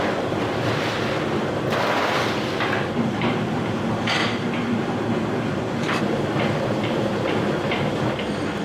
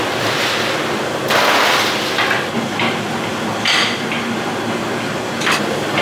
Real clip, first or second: second